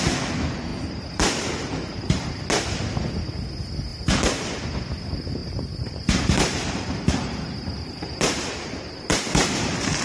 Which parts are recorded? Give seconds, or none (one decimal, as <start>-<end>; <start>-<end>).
0.0-0.7; 2.3-3.9; 4.6-5.4